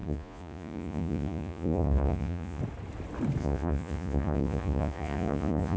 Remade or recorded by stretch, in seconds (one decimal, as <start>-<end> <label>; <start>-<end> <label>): 0.0-2.6 remade; 2.6-3.4 recorded; 3.4-5.8 remade

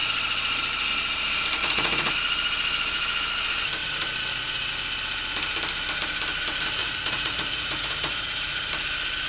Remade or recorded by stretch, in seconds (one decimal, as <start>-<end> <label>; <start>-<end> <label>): 0.0-1.6 recorded; 1.6-2.1 remade; 2.1-3.8 recorded; 3.8-4.7 remade; 4.7-6.8 recorded; 6.8-8.7 remade; 8.7-9.3 recorded

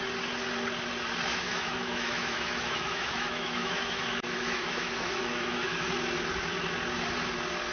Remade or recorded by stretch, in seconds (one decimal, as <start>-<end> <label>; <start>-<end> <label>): 0.0-1.3 recorded; 1.3-5.9 remade; 5.9-7.7 recorded

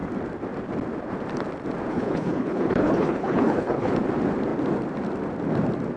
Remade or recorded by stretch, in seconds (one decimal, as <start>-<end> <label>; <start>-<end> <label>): 0.0-1.9 recorded; 1.9-3.9 remade; 3.9-6.0 recorded

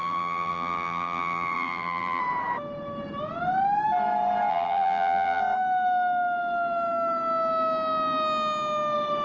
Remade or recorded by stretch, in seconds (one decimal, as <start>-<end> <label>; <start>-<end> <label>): 0.0-2.2 remade; 2.2-4.5 recorded; 4.5-5.4 remade; 5.4-9.2 recorded

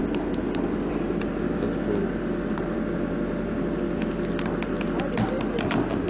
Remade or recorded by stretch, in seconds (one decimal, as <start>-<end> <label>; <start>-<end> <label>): 0.0-6.1 recorded

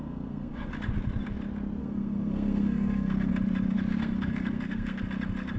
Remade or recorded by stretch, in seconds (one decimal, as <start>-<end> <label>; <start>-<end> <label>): 0.0-0.7 remade; 0.7-1.8 recorded; 1.8-3.3 remade; 3.3-4.0 recorded; 4.0-5.0 remade; 5.0-5.6 recorded

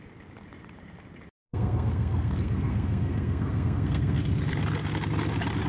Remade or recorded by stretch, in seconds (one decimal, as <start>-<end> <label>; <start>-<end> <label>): 0.0-1.5 recorded; 1.5-4.2 remade; 4.2-5.7 recorded